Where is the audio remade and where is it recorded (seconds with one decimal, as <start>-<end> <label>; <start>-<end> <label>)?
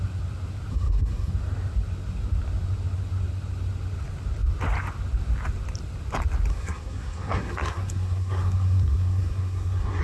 0.0-0.7 recorded; 0.7-1.3 remade; 1.3-6.5 recorded; 6.5-10.0 remade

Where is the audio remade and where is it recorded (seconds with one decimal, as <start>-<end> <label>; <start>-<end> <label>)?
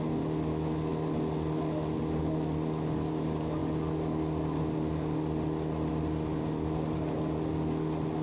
0.0-8.2 recorded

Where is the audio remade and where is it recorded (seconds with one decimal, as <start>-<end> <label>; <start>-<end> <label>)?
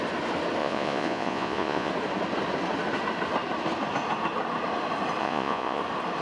0.0-0.6 recorded; 0.6-1.9 remade; 1.9-5.2 recorded; 5.2-5.8 remade; 5.8-6.2 recorded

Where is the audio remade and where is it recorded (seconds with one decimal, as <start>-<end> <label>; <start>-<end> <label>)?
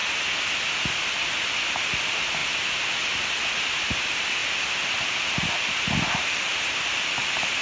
0.0-2.4 recorded; 2.4-3.6 remade; 3.6-6.5 recorded; 6.5-7.0 remade; 7.0-7.6 recorded